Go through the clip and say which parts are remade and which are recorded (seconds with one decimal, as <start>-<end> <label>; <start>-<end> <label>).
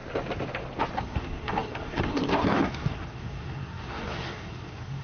0.0-1.0 recorded; 1.0-5.0 remade